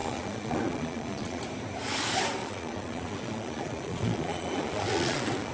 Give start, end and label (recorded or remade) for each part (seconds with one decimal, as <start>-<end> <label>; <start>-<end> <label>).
0.0-1.4 remade; 1.4-2.4 recorded; 2.4-5.5 remade